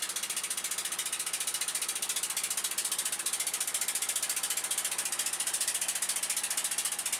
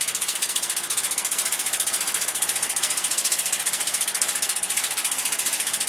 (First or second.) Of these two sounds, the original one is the first